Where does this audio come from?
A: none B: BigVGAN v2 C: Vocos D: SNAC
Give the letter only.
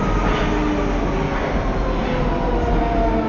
A